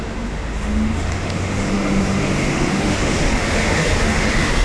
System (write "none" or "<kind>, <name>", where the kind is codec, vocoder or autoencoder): autoencoder, DAC-VAE